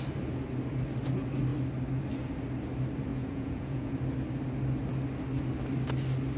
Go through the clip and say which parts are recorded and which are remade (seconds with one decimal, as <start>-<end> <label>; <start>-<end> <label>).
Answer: 0.0-3.1 recorded; 3.1-4.0 remade; 4.0-6.4 recorded